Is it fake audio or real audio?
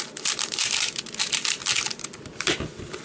real